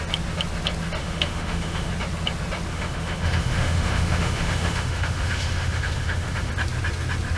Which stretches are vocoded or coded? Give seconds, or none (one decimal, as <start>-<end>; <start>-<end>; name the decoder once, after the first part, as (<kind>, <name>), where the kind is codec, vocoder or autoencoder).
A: 1.0-1.9 (autoencoder, DAC-VAE); 2.7-6.5